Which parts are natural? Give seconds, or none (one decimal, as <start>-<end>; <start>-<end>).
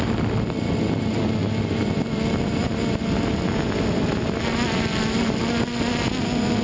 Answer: 0.0-6.6